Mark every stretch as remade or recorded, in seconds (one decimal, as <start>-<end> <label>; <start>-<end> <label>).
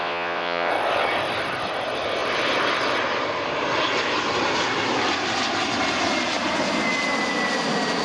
0.0-0.7 remade; 0.7-8.0 recorded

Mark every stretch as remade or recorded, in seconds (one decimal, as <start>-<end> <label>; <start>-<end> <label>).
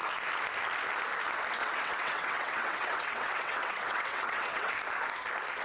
0.0-1.6 recorded; 1.6-4.7 remade; 4.7-5.6 recorded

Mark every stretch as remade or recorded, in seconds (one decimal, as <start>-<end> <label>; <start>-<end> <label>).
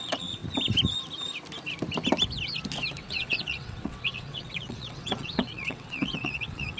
0.0-0.4 remade; 0.4-3.0 recorded; 3.0-6.8 remade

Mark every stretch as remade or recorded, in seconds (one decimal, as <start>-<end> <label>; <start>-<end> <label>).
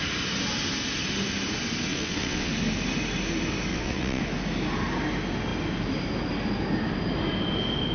0.0-1.9 recorded; 1.9-2.5 remade; 2.5-3.7 recorded; 3.7-4.2 remade; 4.2-7.9 recorded